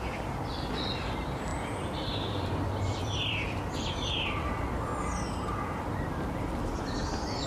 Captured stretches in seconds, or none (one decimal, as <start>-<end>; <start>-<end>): 1.5-2.1; 4.9-6.1